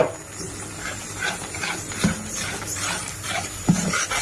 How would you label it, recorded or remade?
recorded